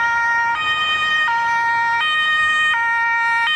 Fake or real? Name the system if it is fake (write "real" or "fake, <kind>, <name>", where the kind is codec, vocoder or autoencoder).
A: real